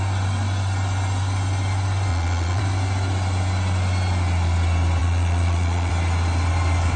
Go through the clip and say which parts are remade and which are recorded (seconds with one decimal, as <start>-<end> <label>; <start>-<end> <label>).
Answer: 0.0-2.1 recorded; 2.1-2.6 remade; 2.6-5.0 recorded; 5.0-5.9 remade; 5.9-7.0 recorded